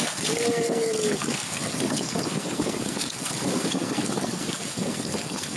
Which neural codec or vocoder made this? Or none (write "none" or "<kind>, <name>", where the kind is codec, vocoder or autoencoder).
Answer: codec, SNAC